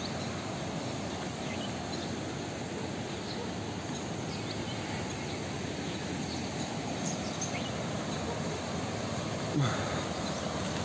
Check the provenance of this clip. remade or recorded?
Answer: recorded